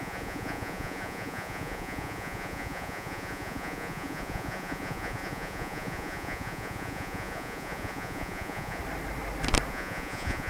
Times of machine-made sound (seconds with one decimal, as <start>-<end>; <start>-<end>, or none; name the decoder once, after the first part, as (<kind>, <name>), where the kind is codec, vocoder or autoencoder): 0.0-8.8 (vocoder, Vocos); 9.7-10.5